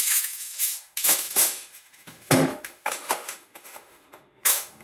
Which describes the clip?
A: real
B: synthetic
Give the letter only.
B